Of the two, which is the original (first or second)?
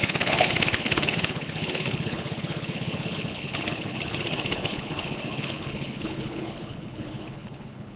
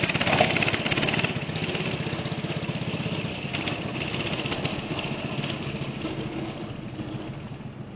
second